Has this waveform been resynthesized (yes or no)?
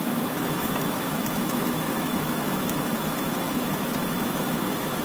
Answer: yes